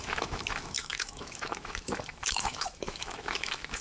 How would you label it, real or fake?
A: fake